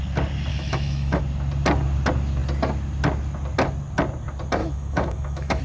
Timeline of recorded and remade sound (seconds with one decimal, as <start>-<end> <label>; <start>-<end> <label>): 0.0-0.5 recorded; 0.5-1.2 remade; 1.2-4.6 recorded; 4.6-5.6 remade